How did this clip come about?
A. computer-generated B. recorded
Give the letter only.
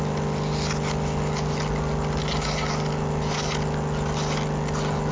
B